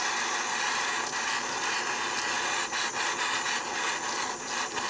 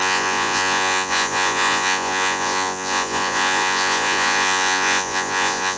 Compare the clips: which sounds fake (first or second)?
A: second